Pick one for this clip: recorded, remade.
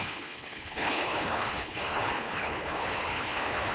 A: remade